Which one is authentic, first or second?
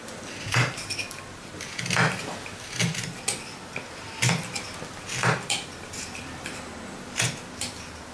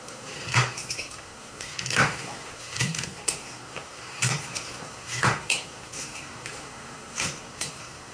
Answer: first